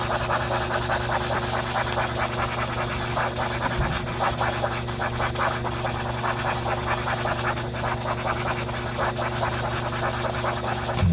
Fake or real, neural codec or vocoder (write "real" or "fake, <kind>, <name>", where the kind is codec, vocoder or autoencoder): real